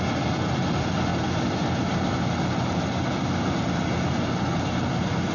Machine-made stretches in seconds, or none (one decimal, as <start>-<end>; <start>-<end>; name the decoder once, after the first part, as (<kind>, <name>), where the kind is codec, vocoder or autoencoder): none